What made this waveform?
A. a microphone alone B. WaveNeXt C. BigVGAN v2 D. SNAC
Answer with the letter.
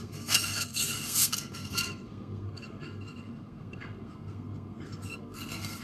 D